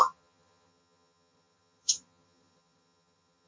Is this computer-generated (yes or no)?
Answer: yes